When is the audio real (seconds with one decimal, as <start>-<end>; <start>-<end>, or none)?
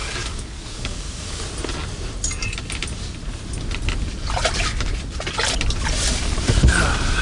1.4-7.2